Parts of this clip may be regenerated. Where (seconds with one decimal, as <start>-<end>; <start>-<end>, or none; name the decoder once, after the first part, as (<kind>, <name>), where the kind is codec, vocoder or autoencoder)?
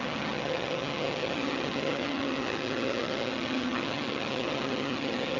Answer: 0.0-5.4 (vocoder, HiFi-GAN)